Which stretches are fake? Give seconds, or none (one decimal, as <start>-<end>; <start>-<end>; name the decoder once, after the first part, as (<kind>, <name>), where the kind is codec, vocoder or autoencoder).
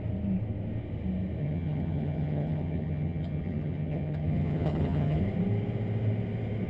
1.4-5.2 (vocoder, HiFi-GAN)